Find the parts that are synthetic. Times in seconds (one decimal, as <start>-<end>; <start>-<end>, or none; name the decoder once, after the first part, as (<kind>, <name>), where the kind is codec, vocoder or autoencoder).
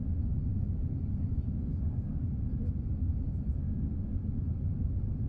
none